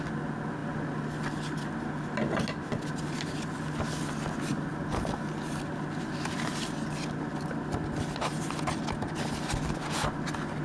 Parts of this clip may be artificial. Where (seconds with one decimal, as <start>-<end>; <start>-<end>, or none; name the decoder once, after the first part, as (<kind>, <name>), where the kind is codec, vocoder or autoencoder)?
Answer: none